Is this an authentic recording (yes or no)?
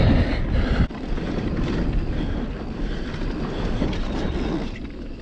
no